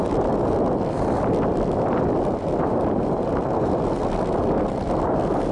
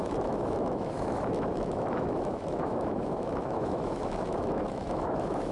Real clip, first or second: first